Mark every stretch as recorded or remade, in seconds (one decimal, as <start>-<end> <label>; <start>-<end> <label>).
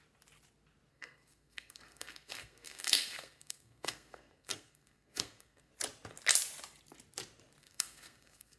0.0-0.9 recorded; 0.9-5.7 remade; 5.7-7.6 recorded; 7.6-8.6 remade